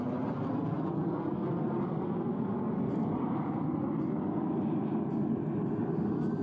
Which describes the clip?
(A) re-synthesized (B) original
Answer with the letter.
B